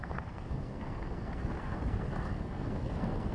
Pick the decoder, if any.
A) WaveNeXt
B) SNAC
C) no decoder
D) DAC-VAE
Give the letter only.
B